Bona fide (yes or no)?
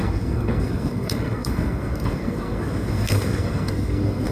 no